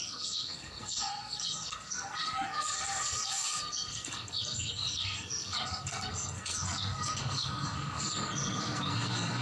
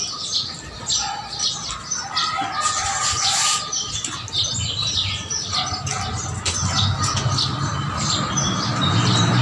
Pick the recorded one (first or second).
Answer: second